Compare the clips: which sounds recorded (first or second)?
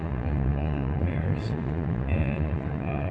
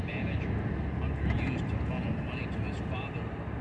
second